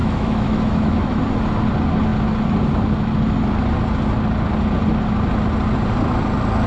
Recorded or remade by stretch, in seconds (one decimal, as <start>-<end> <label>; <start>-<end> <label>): 0.0-1.2 remade; 1.2-6.7 recorded